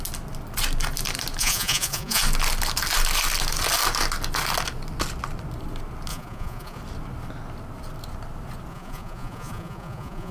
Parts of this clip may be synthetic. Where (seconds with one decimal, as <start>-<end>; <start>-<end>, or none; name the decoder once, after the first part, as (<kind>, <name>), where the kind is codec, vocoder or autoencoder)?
1.4-2.2 (vocoder, Vocos); 6.1-6.8; 8.7-10.3